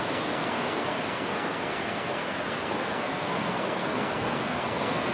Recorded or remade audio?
remade